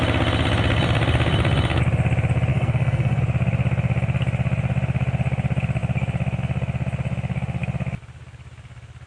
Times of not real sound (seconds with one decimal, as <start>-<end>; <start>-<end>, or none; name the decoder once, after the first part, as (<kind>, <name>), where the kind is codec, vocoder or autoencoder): 2.5-3.2 (codec, SNAC)